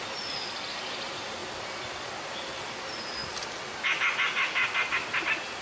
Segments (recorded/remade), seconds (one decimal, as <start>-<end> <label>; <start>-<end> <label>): 0.0-3.2 remade; 3.2-4.9 recorded; 4.9-5.6 remade